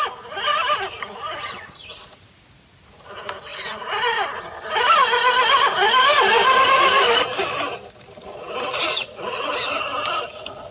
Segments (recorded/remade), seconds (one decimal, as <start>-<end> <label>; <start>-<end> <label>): 0.0-8.8 recorded; 8.8-9.5 remade; 9.5-10.7 recorded